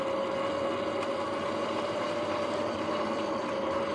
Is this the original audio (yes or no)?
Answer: yes